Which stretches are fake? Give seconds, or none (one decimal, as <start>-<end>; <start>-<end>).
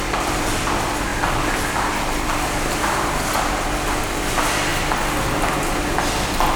none